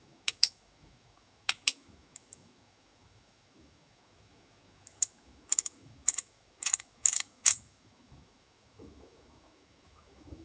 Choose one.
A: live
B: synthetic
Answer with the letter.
B